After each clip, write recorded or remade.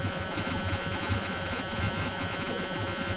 remade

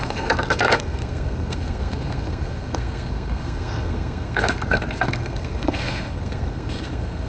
remade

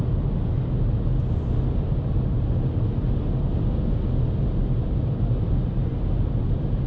recorded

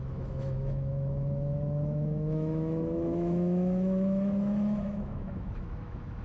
remade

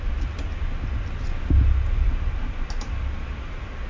recorded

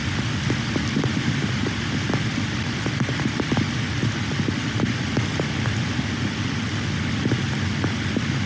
remade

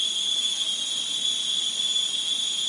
recorded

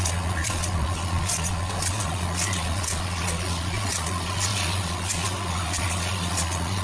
remade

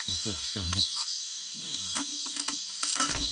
remade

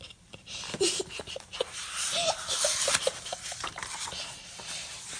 remade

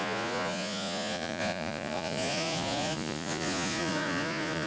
remade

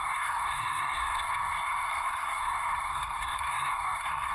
remade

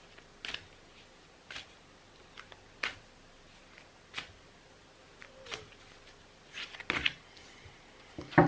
recorded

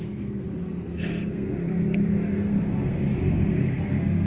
remade